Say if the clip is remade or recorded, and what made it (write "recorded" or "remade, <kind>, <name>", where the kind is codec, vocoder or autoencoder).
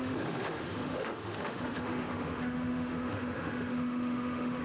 remade, autoencoder, DAC-VAE